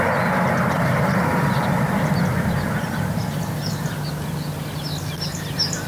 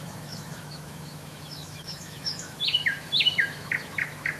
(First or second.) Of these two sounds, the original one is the first